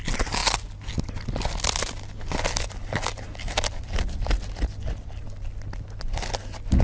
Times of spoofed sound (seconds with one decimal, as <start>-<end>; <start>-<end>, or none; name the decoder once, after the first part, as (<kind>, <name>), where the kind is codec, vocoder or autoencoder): none